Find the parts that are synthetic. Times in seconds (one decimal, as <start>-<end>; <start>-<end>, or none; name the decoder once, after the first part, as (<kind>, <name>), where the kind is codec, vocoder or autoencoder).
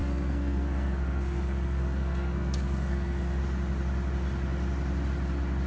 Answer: 0.0-3.4 (codec, SNAC)